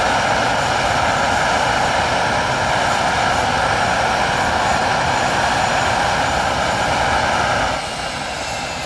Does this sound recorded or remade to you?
recorded